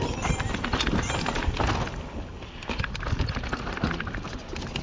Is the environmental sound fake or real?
real